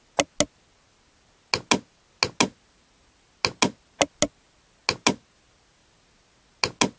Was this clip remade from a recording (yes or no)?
no